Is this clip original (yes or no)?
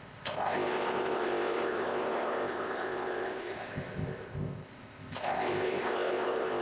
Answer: no